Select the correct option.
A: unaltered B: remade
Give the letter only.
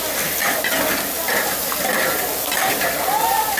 A